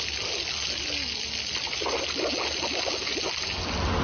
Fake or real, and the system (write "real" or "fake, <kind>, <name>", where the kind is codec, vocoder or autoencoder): real